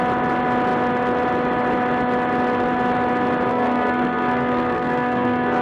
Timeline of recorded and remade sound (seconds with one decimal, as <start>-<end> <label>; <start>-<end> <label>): 0.0-3.5 recorded; 3.5-5.6 remade